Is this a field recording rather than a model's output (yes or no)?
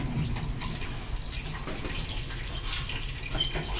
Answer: yes